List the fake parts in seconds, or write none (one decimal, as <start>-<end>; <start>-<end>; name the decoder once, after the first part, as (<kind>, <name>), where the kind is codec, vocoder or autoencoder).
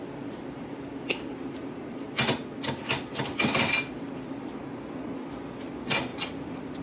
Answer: 1.3-2.4 (vocoder, BigVGAN v2); 6.1-6.8